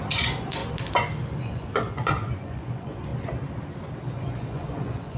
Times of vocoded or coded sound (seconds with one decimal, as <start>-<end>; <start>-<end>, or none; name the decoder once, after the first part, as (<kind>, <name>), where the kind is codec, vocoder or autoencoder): 0.0-0.6 (vocoder, Vocos); 1.4-3.1; 4.1-5.2